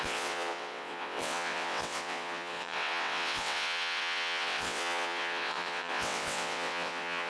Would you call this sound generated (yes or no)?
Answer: yes